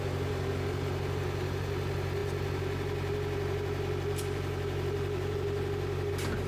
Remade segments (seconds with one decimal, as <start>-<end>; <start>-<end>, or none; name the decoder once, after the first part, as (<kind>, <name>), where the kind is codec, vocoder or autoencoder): none